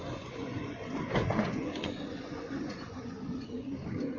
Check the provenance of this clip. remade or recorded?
remade